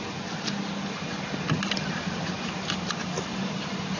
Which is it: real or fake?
real